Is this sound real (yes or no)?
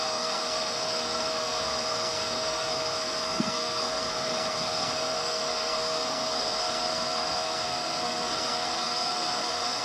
no